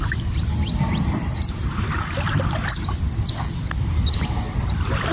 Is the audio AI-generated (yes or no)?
no